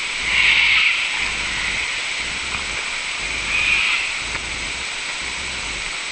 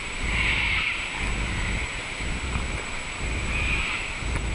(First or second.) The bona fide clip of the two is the first